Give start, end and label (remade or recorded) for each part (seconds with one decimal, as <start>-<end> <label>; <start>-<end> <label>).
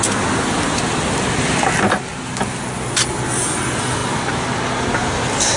0.0-5.6 recorded